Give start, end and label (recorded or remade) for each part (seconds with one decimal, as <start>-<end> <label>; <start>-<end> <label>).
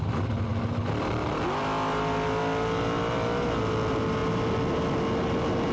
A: 0.0-5.7 recorded